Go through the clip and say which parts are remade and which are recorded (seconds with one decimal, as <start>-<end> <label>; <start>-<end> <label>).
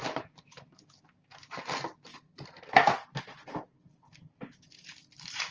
0.0-1.6 remade; 1.6-5.5 recorded